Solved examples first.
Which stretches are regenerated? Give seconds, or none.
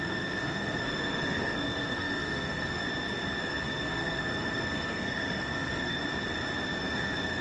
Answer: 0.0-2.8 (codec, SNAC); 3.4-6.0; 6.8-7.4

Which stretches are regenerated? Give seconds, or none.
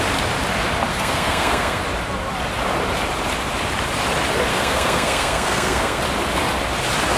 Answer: 0.9-1.8 (codec, SNAC); 4.5-6.0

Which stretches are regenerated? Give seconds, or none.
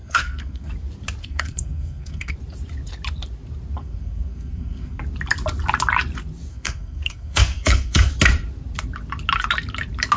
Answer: 0.0-0.7 (codec, SNAC); 1.2-2.3; 3.8-5.0; 6.5-8.1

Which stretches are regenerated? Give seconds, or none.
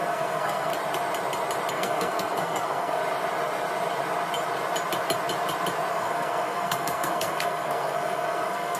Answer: 0.0-0.7 (codec, SNAC); 1.7-3.0; 5.9-8.8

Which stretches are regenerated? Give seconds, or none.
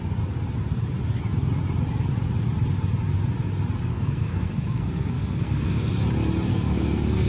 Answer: 3.9-5.9 (codec, SNAC); 6.5-7.3